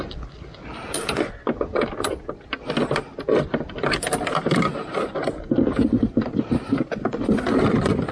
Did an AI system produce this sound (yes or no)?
no